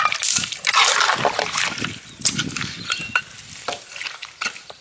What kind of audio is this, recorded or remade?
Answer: recorded